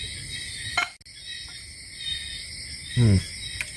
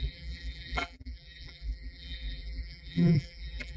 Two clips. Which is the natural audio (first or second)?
first